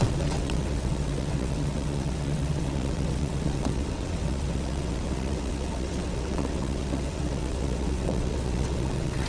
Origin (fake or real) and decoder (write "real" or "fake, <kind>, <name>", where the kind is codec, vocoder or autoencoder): fake, vocoder, WaveNeXt